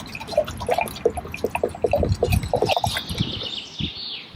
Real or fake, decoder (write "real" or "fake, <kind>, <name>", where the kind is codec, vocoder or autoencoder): real